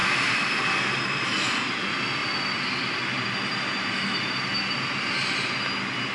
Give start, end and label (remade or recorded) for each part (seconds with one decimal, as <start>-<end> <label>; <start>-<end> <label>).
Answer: 0.0-6.1 recorded

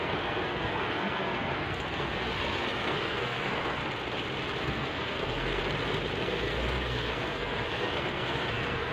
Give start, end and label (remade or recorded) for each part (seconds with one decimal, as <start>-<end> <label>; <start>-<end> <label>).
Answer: 0.0-3.8 remade; 3.8-4.6 recorded; 4.6-5.6 remade; 5.6-6.2 recorded; 6.2-8.9 remade

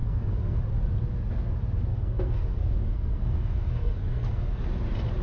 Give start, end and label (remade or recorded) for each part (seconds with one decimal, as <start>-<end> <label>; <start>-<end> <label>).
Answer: 0.0-0.6 remade; 0.6-1.9 recorded; 1.9-4.6 remade; 4.6-5.2 recorded

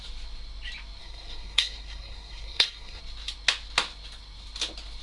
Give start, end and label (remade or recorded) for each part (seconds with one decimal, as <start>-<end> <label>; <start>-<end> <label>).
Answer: 0.0-1.0 recorded; 1.0-3.0 remade; 3.0-5.0 recorded

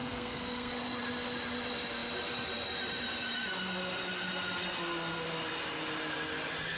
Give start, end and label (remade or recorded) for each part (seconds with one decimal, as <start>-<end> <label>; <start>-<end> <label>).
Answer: 0.0-0.7 remade; 0.7-6.8 recorded

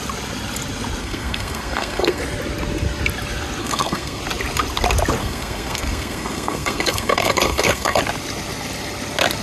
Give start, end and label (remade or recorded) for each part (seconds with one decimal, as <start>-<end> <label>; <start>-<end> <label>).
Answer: 0.0-1.0 recorded; 1.0-2.2 remade; 2.2-3.6 recorded; 3.6-4.2 remade; 4.2-5.2 recorded; 5.2-8.0 remade; 8.0-9.4 recorded

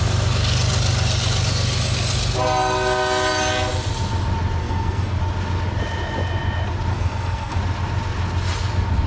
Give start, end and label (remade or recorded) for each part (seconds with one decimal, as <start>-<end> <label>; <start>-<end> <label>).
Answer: 0.0-4.6 recorded; 4.6-5.2 remade; 5.2-6.9 recorded; 6.9-7.6 remade; 7.6-9.1 recorded